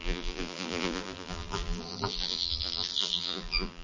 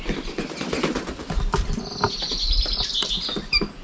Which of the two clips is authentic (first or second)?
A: second